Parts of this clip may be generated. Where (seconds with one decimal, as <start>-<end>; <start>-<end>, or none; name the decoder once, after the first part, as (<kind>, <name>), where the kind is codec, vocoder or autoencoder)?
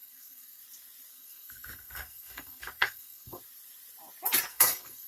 0.0-0.6 (codec, SNAC); 1.1-3.4; 4.5-5.1